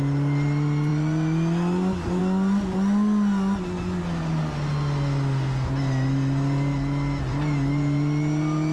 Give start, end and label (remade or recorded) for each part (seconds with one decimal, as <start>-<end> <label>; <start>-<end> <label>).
0.0-8.7 recorded

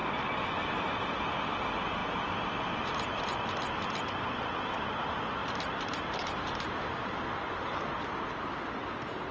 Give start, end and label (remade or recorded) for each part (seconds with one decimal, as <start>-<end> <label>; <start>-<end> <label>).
0.0-2.0 recorded; 2.0-3.2 remade; 3.2-5.4 recorded; 5.4-8.4 remade; 8.4-9.3 recorded

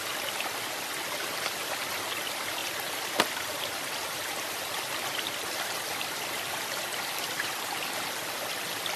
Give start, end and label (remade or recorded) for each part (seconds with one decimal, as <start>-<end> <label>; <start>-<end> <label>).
0.0-2.6 recorded; 2.6-7.6 remade; 7.6-9.0 recorded

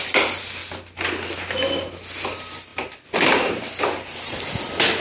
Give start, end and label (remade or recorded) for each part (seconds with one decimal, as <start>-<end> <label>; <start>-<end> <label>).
0.0-5.0 recorded

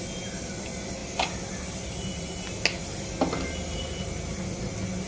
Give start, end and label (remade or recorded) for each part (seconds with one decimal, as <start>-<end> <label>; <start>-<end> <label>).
0.0-5.1 recorded

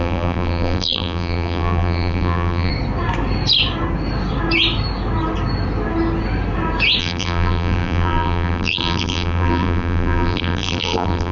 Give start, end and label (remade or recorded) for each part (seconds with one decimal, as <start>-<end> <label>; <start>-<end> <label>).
0.0-2.7 remade; 2.7-7.0 recorded; 7.0-11.3 remade

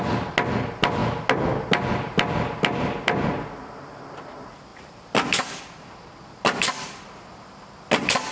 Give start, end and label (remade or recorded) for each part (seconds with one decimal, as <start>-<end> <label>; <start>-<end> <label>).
0.0-8.3 recorded

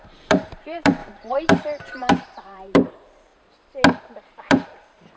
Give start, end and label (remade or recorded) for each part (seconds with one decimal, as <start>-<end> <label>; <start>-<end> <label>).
0.0-3.3 remade; 3.3-4.3 recorded; 4.3-5.2 remade